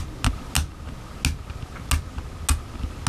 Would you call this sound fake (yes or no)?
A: no